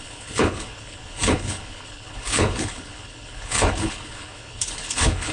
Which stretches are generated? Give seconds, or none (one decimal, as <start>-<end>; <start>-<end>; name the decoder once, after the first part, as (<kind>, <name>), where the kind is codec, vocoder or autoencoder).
0.0-5.3 (codec, HILCodec)